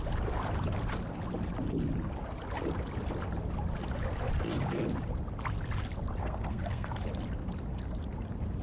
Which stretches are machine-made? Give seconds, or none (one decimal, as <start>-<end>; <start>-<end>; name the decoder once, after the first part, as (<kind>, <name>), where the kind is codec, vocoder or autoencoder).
6.2-6.9 (codec, SNAC)